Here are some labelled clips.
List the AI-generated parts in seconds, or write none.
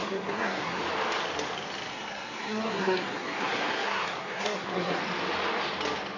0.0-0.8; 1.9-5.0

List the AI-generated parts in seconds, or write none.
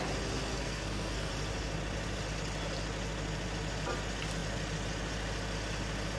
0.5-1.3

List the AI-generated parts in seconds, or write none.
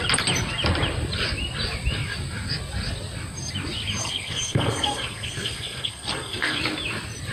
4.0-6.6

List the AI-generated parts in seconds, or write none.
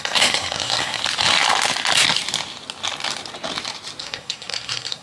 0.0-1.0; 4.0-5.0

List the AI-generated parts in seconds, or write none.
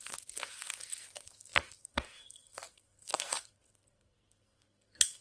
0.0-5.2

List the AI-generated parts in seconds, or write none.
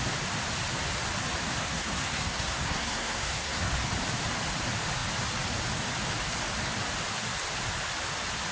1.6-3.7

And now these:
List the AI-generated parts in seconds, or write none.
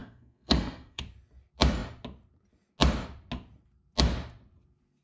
0.0-1.0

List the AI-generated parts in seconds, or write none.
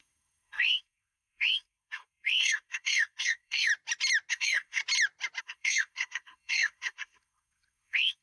0.0-3.7; 4.3-4.8; 5.4-8.2